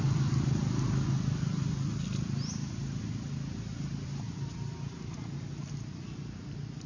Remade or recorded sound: recorded